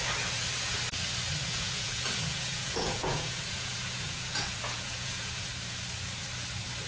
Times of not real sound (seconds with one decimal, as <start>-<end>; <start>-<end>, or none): 1.4-5.5